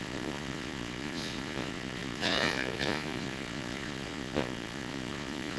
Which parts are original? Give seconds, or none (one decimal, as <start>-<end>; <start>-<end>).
none